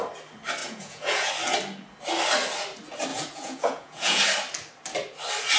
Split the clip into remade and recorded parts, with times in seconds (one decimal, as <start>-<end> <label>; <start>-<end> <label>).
0.0-0.6 recorded; 0.6-1.3 remade; 1.3-3.1 recorded; 3.1-4.2 remade; 4.2-5.6 recorded